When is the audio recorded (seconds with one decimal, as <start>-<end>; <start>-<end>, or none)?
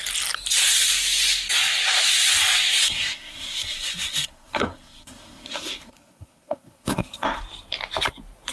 0.0-2.8; 7.4-8.5